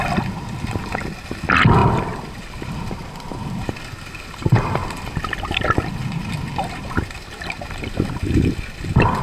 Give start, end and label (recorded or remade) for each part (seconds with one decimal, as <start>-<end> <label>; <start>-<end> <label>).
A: 0.0-1.8 recorded; 1.8-2.7 remade; 2.7-4.8 recorded; 4.8-8.5 remade; 8.5-9.2 recorded